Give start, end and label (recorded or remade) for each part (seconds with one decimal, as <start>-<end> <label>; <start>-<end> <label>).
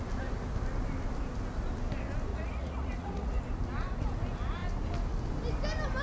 0.0-2.3 recorded; 2.3-3.4 remade; 3.4-6.0 recorded